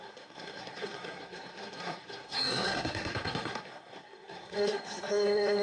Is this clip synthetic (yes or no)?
yes